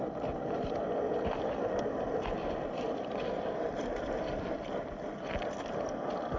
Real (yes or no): no